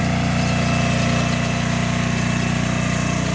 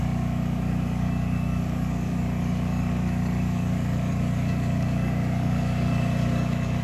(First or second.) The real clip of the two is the first